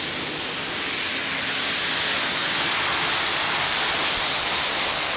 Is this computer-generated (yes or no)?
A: no